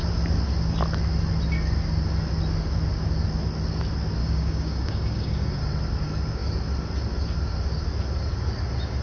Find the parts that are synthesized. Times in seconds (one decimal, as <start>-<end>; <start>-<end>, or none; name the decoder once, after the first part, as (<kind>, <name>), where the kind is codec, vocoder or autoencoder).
4.2-5.7 (codec, DAC)

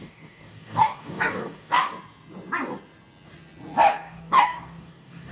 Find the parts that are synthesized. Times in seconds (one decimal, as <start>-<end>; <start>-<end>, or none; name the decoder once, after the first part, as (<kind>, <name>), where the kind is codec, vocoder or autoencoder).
0.0-1.9 (codec, DAC); 3.9-5.3

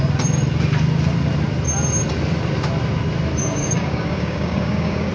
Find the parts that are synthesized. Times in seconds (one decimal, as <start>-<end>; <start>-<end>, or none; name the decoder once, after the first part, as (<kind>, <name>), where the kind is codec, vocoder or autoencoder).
3.4-5.1 (codec, DAC)

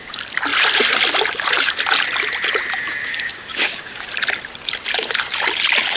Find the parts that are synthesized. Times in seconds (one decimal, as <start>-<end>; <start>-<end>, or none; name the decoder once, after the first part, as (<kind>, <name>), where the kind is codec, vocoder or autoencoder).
3.0-4.1 (codec, DAC)

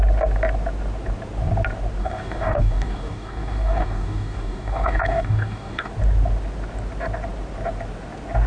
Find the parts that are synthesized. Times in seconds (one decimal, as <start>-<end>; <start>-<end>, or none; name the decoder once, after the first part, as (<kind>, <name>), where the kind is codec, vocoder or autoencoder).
2.0-5.9 (codec, DAC)

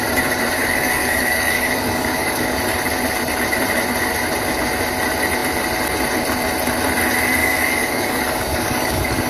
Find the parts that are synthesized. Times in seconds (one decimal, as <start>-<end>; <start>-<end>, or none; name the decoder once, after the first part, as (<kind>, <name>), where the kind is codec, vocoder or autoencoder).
0.6-2.6 (codec, DAC); 7.4-9.3

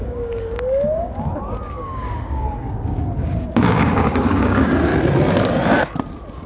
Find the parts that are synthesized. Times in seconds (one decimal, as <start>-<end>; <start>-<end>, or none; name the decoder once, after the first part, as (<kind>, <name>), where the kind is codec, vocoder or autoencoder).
0.0-4.9 (codec, DAC)

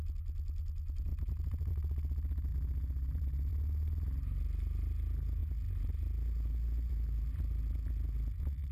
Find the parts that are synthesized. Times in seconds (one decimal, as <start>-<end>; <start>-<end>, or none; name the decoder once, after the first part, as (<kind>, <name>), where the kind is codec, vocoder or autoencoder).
none